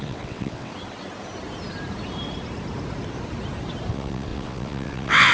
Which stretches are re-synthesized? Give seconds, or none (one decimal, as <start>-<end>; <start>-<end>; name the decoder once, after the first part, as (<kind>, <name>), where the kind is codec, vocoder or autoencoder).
0.0-0.7 (vocoder, WaveNeXt); 3.9-5.3